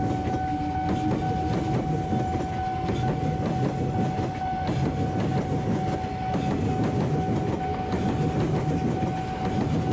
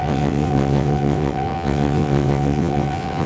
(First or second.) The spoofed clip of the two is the second